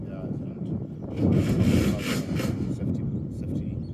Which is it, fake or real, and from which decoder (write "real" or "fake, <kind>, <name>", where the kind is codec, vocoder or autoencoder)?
real